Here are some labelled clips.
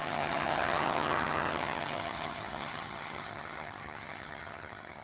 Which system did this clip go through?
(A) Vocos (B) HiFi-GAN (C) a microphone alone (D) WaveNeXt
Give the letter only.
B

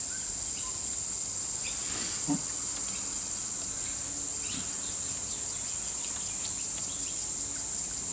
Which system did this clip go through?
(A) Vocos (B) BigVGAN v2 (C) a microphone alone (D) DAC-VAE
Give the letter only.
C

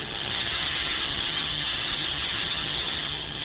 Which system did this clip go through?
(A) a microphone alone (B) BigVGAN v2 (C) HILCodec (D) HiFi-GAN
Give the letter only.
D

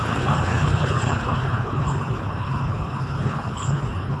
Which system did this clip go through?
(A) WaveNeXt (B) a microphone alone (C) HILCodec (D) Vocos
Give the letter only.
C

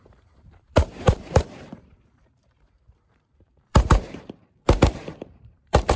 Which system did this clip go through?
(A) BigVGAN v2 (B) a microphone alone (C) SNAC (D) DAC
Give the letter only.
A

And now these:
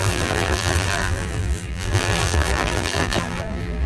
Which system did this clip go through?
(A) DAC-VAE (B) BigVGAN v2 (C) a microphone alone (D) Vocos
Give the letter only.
B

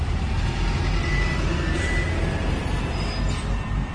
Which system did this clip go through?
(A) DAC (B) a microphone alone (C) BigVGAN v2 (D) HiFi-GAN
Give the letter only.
B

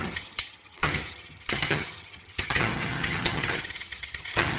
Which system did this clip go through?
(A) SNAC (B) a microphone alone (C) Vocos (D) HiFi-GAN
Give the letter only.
D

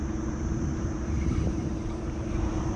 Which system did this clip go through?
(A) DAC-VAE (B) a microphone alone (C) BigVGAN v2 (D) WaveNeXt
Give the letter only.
C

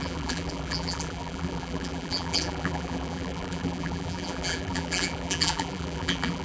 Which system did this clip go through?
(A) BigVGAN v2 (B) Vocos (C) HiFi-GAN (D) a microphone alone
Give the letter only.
A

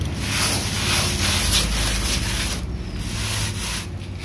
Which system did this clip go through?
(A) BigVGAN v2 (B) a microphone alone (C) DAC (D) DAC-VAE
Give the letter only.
B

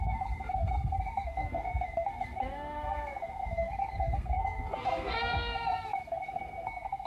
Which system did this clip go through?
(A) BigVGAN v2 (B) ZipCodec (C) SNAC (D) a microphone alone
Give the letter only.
C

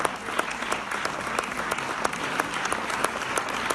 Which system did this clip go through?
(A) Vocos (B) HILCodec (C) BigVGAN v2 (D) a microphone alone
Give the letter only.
D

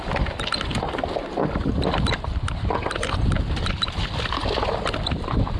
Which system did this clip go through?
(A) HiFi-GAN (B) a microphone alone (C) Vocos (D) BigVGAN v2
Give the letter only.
B